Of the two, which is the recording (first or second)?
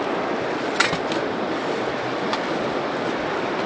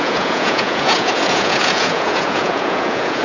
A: first